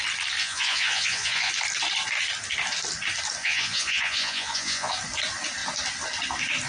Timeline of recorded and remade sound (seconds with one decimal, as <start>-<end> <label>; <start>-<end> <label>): 0.0-0.4 recorded; 0.4-1.5 remade; 1.5-3.4 recorded; 3.4-4.9 remade; 4.9-6.7 recorded